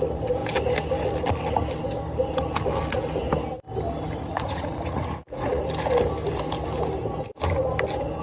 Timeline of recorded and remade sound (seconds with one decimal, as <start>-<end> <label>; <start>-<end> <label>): 0.0-4.3 recorded; 4.3-5.6 remade; 5.6-8.2 recorded